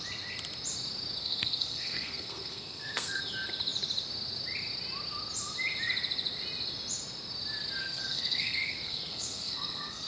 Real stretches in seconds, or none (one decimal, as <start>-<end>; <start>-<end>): 0.0-1.2; 3.2-7.8